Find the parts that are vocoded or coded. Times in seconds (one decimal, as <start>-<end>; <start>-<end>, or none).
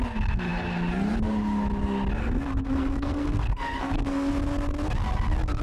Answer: 2.2-4.3